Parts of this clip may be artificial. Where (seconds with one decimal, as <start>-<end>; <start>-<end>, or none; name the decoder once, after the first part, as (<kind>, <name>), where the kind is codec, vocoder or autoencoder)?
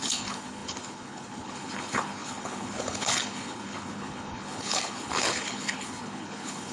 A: 0.0-6.7 (codec, HILCodec)